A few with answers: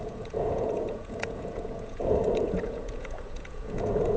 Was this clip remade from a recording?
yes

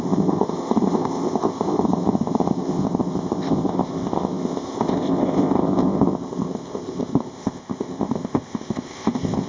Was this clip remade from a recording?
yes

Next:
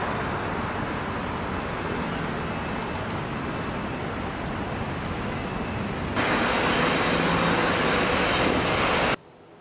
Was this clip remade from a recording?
no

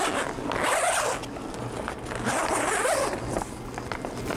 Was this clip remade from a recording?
no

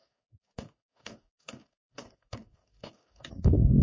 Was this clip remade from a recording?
yes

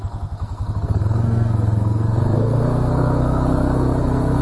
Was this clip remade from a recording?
yes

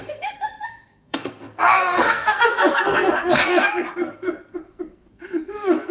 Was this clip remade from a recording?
yes